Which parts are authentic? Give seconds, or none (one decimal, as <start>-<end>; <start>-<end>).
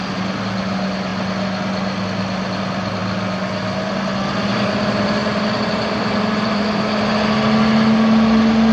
0.0-4.5; 7.1-8.7